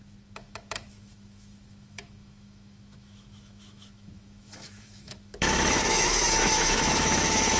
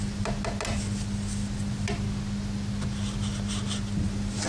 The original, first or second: second